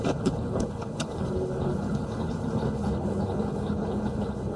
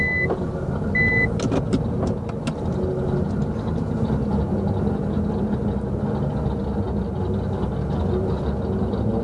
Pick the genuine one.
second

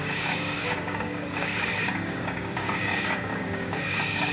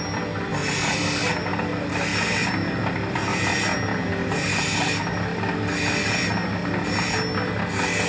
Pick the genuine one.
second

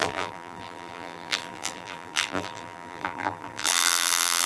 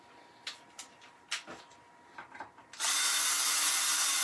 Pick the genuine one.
second